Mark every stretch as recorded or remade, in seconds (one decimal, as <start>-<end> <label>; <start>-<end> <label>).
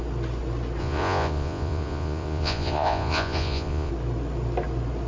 0.0-0.8 recorded; 0.8-3.9 remade; 3.9-5.1 recorded